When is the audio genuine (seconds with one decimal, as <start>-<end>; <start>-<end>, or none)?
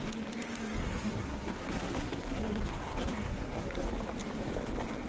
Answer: 0.0-0.8; 3.9-5.1